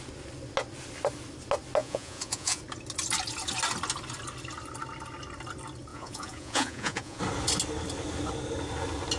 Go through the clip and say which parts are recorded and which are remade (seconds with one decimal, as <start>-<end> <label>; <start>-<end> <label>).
0.0-1.8 recorded; 1.8-2.6 remade; 2.6-5.9 recorded; 5.9-7.2 remade; 7.2-9.2 recorded

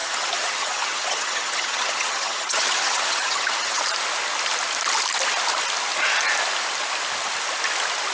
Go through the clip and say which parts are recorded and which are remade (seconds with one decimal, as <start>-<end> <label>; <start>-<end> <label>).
0.0-3.8 remade; 3.8-8.1 recorded

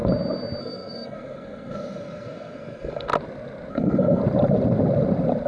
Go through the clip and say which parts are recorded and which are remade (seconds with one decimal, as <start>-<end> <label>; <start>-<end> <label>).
0.0-0.6 recorded; 0.6-3.1 remade; 3.1-3.7 recorded; 3.7-4.2 remade; 4.2-5.5 recorded

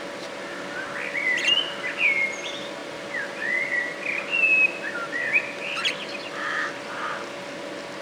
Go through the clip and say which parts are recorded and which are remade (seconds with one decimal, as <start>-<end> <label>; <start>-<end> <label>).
0.0-8.0 recorded

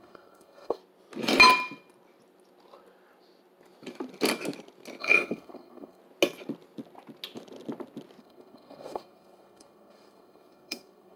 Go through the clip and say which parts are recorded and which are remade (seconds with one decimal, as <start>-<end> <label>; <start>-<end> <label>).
0.0-0.8 remade; 0.8-5.0 recorded; 5.0-6.0 remade; 6.0-8.2 recorded; 8.2-11.2 remade

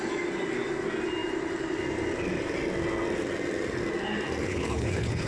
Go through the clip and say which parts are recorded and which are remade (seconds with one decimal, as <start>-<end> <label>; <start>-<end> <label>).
0.0-4.5 recorded; 4.5-5.3 remade

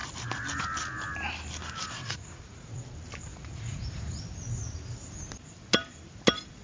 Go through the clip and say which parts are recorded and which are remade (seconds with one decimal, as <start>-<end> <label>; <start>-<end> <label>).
0.0-2.0 recorded; 2.0-2.8 remade; 2.8-3.3 recorded; 3.3-4.2 remade; 4.2-6.6 recorded